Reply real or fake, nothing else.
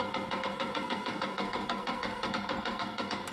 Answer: fake